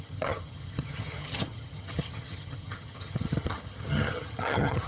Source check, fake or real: fake